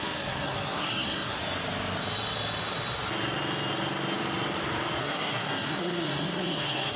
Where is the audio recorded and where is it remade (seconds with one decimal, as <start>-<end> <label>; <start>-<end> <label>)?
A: 0.0-1.4 remade; 1.4-5.0 recorded; 5.0-7.0 remade